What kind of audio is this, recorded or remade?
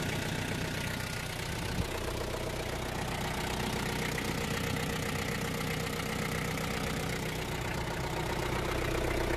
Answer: recorded